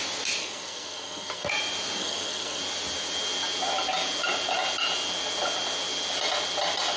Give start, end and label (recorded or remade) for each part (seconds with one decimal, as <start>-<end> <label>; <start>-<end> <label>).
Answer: 0.0-0.4 recorded; 0.4-1.5 remade; 1.5-2.0 recorded; 2.0-2.6 remade; 2.6-7.0 recorded